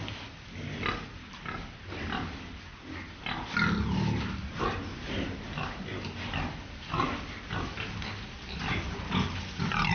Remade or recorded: recorded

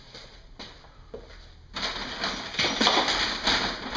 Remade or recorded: recorded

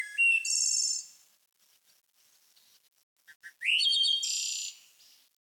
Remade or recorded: recorded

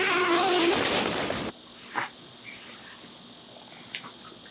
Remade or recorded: recorded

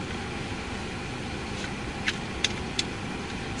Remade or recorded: recorded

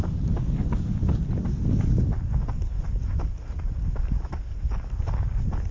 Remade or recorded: recorded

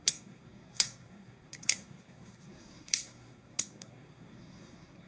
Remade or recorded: remade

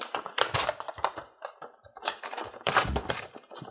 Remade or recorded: remade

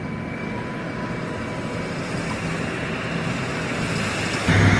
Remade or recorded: recorded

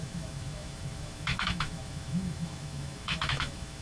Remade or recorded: remade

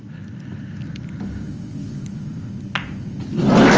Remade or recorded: recorded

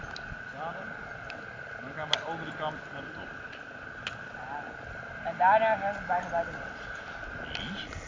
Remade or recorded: recorded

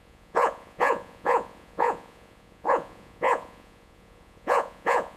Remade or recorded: remade